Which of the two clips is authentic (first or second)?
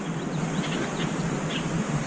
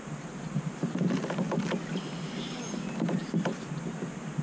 first